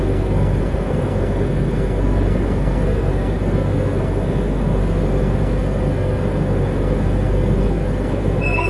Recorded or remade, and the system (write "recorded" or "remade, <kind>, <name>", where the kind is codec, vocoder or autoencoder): remade, codec, SNAC